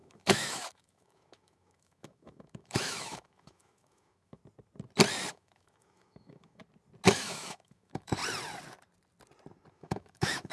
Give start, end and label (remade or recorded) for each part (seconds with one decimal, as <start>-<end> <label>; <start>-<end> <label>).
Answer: 0.0-4.4 remade; 4.4-5.3 recorded; 5.3-6.6 remade; 6.6-7.1 recorded; 7.1-8.2 remade; 8.2-9.7 recorded; 9.7-10.5 remade